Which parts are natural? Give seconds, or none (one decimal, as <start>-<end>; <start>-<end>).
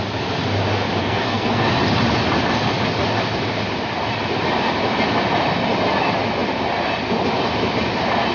0.0-1.0; 1.7-8.3